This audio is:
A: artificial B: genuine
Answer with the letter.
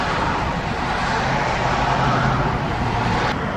A